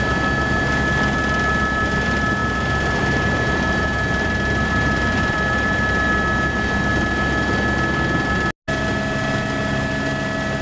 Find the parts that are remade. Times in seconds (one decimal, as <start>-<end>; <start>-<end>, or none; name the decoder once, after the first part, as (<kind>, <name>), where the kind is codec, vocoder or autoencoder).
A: 2.4-6.1 (vocoder, BigVGAN v2)